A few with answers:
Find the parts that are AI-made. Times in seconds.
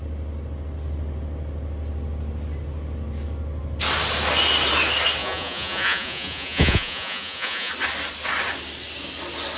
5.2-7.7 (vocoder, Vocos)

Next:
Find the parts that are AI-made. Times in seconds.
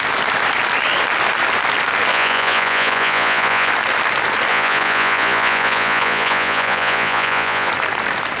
2.1-3.7 (vocoder, Vocos); 4.5-7.7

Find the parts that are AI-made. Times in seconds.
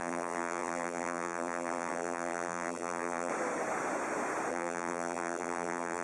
0.0-3.3 (vocoder, BigVGAN v2); 4.5-6.0